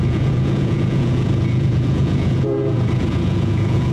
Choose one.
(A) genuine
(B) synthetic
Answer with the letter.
B